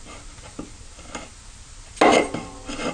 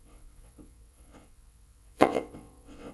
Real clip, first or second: first